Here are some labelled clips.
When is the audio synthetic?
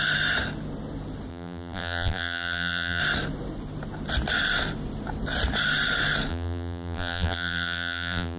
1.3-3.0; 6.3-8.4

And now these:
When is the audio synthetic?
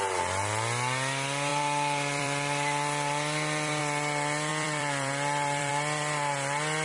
1.5-3.8; 4.5-5.7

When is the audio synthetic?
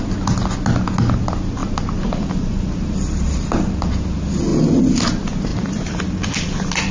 1.6-4.0; 5.5-6.9